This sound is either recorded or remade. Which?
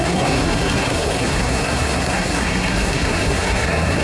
remade